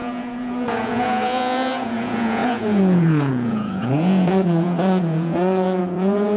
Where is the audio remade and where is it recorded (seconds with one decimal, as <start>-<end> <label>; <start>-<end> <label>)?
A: 0.0-6.4 remade